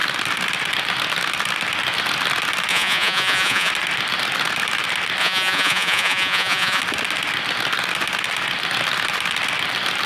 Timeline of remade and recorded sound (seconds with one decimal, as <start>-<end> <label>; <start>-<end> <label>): 0.0-2.7 recorded; 2.7-3.7 remade; 3.7-5.2 recorded; 5.2-6.8 remade; 6.8-10.1 recorded